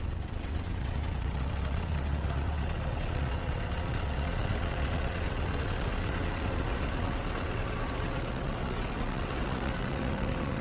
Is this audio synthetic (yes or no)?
yes